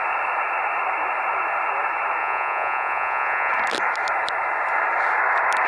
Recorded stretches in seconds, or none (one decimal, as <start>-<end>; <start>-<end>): 0.0-2.2; 3.5-5.7